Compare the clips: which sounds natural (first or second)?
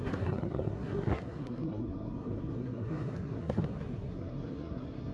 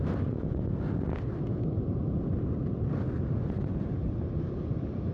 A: second